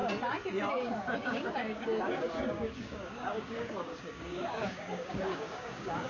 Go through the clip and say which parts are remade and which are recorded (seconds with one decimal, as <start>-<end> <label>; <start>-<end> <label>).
0.0-0.7 recorded; 0.7-6.1 remade